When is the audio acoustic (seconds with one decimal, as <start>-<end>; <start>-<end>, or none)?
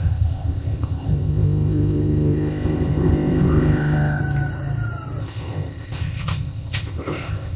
4.2-5.2